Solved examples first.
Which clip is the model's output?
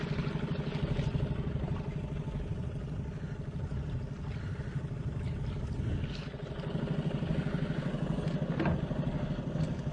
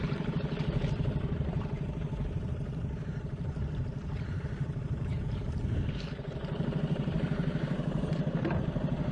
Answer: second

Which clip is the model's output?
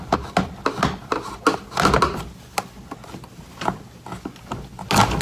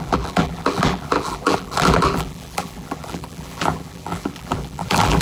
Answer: second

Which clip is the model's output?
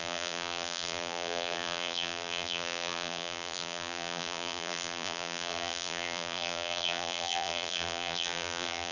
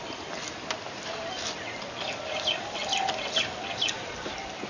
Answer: first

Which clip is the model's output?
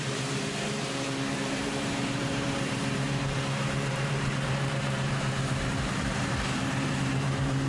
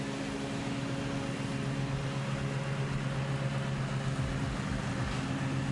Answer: first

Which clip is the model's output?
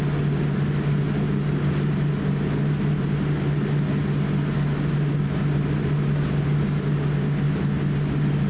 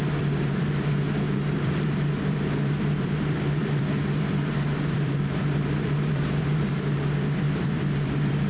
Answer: second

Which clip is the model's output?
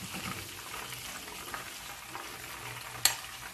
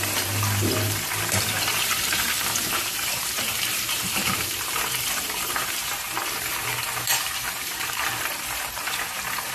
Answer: second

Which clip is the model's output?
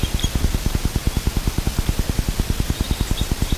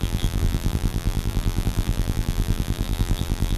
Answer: second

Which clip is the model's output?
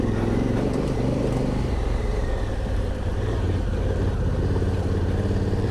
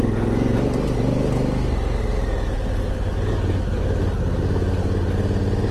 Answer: first